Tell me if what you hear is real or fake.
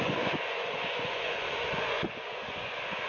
fake